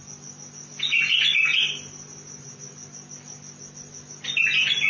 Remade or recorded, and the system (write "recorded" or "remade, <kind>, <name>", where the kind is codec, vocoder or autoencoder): recorded